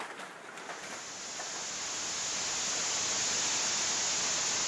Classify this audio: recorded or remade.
recorded